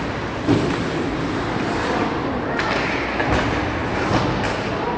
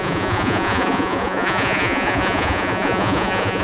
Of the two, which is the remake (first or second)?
second